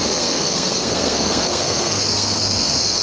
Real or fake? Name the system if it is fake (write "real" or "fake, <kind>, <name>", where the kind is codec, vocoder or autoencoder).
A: fake, codec, SNAC